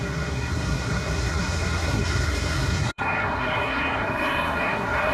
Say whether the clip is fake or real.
fake